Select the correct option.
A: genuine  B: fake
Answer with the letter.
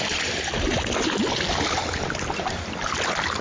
A